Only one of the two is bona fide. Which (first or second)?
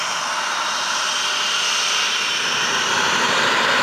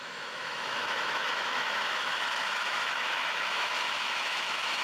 first